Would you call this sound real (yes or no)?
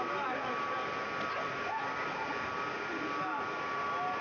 yes